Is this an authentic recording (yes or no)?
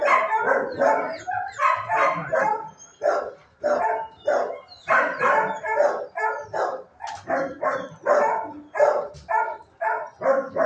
yes